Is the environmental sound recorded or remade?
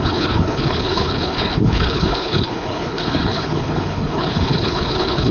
remade